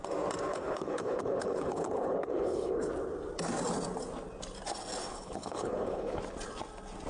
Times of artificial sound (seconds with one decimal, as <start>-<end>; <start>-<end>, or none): 0.5-2.9; 5.1-6.2